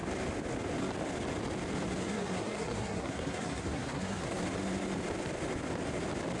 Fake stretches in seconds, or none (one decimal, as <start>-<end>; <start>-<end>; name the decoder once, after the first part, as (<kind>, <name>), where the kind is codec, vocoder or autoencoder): 2.0-4.4 (codec, SNAC)